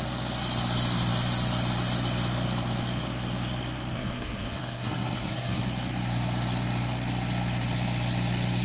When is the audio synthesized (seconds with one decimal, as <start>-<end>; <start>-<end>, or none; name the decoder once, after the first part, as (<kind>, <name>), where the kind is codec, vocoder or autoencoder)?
3.9-5.6 (codec, SNAC)